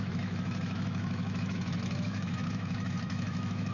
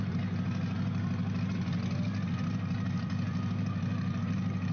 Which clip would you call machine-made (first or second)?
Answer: first